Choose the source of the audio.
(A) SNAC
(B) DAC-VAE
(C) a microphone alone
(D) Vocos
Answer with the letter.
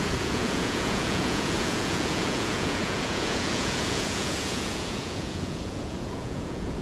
D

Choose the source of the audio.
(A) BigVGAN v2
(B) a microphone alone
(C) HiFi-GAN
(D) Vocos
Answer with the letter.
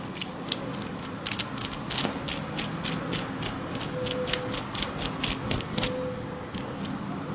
B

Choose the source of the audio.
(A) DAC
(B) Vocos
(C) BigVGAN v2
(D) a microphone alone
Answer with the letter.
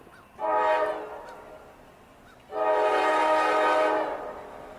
D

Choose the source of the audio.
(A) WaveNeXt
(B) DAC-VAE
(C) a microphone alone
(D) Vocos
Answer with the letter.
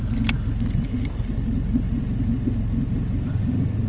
C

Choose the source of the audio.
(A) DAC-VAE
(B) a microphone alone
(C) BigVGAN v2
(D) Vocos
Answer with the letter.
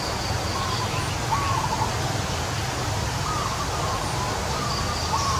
B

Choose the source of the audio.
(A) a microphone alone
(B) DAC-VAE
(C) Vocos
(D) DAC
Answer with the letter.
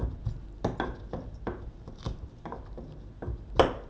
A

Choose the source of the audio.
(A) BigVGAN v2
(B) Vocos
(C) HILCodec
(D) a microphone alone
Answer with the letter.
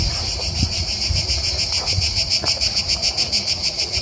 B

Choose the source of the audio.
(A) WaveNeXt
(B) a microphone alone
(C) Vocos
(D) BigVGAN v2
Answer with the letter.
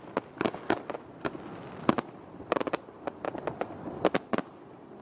B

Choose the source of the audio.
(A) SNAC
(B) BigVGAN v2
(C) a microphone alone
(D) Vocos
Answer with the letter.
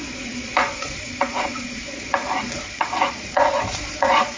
D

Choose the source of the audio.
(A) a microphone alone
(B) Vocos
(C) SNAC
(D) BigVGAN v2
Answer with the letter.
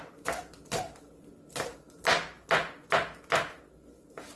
A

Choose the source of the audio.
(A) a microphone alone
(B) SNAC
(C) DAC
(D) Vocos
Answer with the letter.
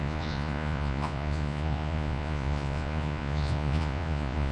D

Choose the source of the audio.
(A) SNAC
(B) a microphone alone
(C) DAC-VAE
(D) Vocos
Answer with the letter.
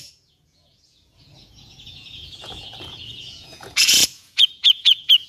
D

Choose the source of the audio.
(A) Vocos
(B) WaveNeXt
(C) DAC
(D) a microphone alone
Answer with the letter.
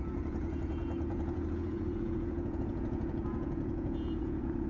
A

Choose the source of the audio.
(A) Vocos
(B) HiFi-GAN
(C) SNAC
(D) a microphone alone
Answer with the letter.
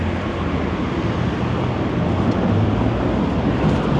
D